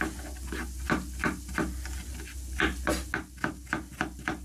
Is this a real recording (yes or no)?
yes